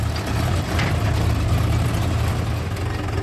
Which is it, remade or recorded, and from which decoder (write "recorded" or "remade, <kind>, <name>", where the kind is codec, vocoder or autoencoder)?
recorded